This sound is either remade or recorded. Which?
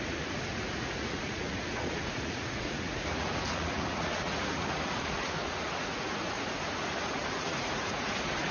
remade